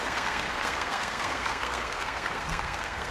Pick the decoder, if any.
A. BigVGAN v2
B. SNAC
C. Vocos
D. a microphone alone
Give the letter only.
B